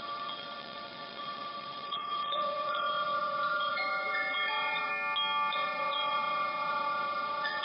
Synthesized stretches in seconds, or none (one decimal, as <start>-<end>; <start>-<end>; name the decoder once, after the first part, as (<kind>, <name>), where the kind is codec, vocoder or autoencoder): 0.0-4.9 (vocoder, WaveNeXt); 5.5-7.6